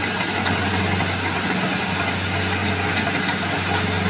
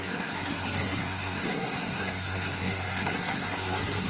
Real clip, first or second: first